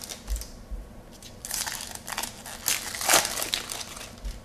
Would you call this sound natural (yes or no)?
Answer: yes